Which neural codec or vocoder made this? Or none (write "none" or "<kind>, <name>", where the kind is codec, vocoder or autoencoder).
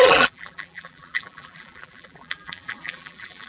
vocoder, BigVGAN v2